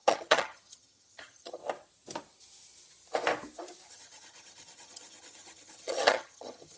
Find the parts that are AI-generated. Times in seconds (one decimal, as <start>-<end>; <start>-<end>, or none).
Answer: 0.0-1.6; 3.9-6.8